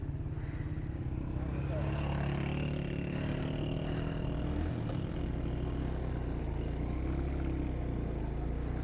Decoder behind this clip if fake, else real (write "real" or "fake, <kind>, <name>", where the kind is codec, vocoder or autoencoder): real